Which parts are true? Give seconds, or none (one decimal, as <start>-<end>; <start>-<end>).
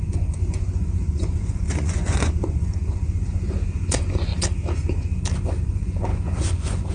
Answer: 4.3-5.6